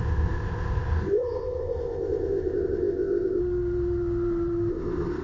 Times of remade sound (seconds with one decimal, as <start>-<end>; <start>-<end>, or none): 0.0-3.4; 4.7-5.2